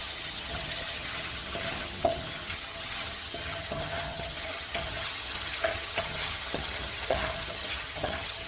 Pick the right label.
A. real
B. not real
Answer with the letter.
B